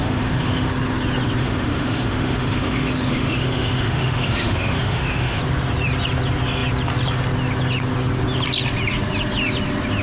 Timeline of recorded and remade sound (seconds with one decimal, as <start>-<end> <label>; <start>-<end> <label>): 0.0-0.7 remade; 0.7-1.4 recorded; 1.4-5.4 remade; 5.4-10.0 recorded

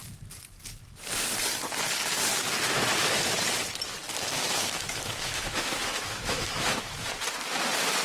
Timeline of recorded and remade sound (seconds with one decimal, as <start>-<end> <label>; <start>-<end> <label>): 0.0-4.4 recorded; 4.4-7.1 remade; 7.1-8.0 recorded